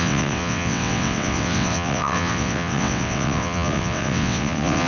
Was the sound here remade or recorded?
remade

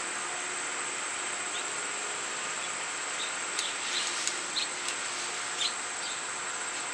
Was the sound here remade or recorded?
recorded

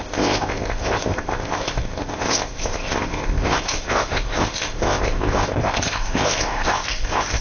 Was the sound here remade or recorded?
remade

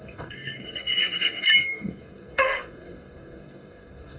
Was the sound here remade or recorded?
remade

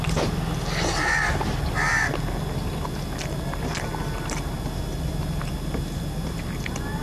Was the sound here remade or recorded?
recorded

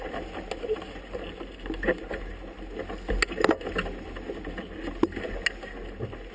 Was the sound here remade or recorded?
recorded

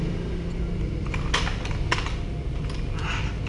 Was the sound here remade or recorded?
recorded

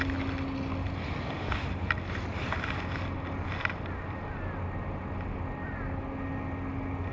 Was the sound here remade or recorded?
recorded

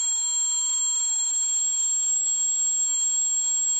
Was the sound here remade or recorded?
recorded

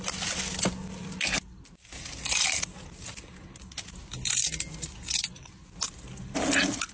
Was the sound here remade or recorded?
recorded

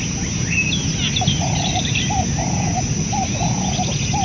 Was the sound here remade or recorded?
recorded